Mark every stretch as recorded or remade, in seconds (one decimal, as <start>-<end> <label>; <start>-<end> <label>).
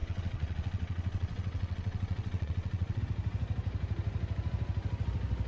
0.0-3.0 remade; 3.0-5.5 recorded